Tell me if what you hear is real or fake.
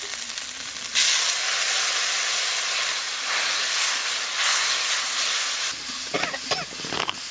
real